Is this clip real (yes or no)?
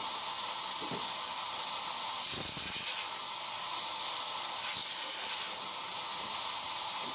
yes